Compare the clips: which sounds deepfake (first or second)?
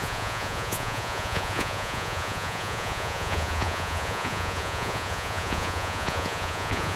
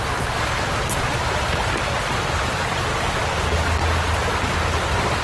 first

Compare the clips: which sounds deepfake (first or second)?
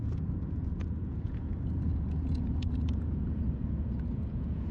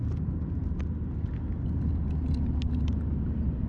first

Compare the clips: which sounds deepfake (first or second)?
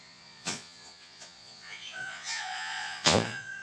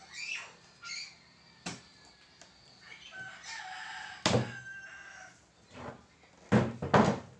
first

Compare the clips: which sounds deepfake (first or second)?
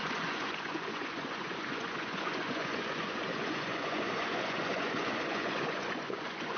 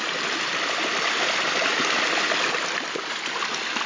first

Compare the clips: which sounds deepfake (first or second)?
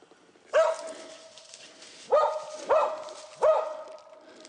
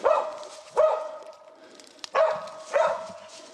second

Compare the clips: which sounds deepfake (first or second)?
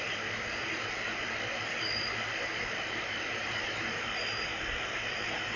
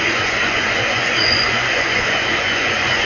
second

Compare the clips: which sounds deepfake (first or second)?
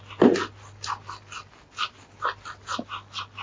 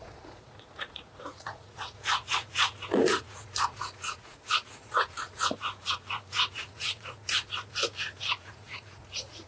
second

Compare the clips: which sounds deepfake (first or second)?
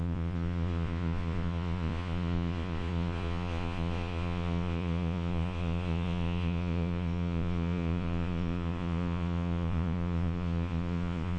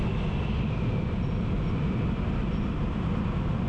first